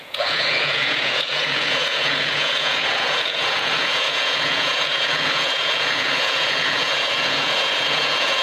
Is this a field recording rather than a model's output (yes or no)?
no